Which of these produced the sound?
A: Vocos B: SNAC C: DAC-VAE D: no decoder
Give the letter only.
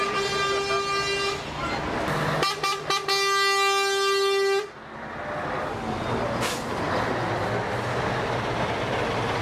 D